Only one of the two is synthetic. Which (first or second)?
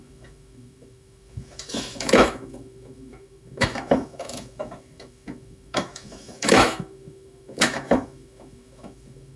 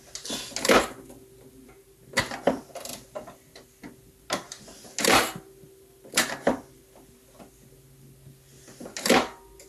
first